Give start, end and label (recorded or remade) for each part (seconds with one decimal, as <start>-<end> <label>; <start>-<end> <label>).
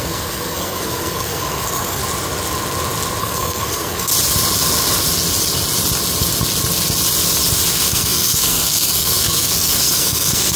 0.0-2.0 remade; 2.0-3.2 recorded; 3.2-4.1 remade; 4.1-7.7 recorded; 7.7-10.6 remade